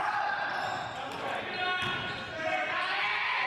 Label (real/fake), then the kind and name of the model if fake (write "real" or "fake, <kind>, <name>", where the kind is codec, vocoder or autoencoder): real